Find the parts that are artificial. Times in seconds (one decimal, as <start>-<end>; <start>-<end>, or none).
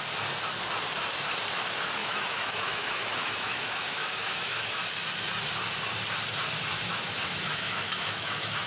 2.0-4.7; 6.7-8.7